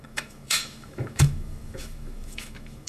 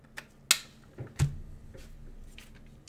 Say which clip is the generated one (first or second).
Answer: first